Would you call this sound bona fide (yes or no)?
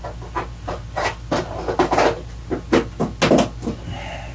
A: yes